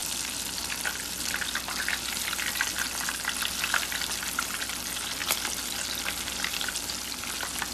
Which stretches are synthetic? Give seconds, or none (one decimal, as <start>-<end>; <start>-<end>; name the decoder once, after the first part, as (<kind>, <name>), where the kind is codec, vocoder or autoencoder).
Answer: none